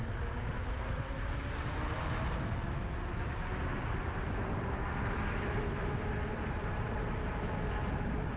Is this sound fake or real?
real